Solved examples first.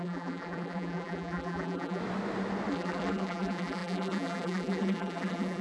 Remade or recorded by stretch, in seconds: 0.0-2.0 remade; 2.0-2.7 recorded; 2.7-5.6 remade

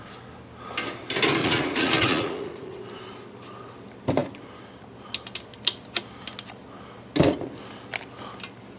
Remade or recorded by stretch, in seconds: 0.0-1.4 recorded; 1.4-2.8 remade; 2.8-8.8 recorded

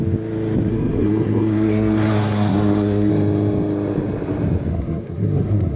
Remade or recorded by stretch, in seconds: 0.0-0.7 recorded; 0.7-3.1 remade; 3.1-4.7 recorded; 4.7-5.8 remade

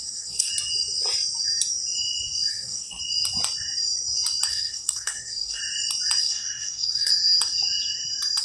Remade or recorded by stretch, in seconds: 0.0-0.5 remade; 0.5-2.5 recorded; 2.5-3.0 remade; 3.0-4.5 recorded; 4.5-5.6 remade; 5.6-6.2 recorded; 6.2-7.1 remade; 7.1-8.4 recorded

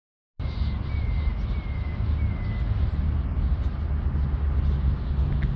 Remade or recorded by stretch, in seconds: 0.0-5.6 recorded

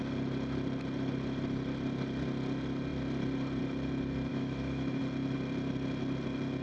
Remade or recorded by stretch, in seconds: 0.0-4.3 recorded; 4.3-5.0 remade; 5.0-6.6 recorded

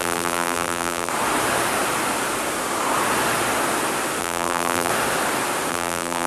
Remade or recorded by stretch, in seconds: 0.0-1.1 remade; 1.1-4.2 recorded; 4.2-4.9 remade; 4.9-5.7 recorded; 5.7-6.3 remade

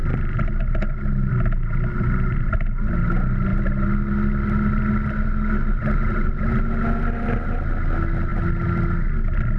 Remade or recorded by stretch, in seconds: 0.0-9.6 recorded